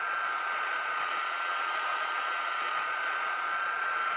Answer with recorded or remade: remade